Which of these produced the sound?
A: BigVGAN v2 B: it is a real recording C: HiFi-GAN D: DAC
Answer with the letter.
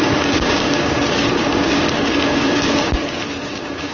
D